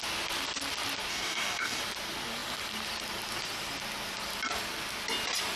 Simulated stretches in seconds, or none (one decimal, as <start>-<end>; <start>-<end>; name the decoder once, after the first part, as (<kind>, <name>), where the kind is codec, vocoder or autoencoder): 1.1-1.8 (codec, DAC)